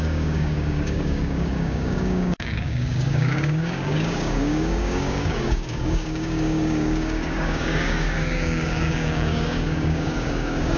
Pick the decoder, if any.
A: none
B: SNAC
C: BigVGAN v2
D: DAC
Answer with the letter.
D